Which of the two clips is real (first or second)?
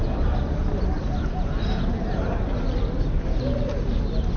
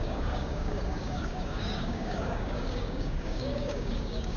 first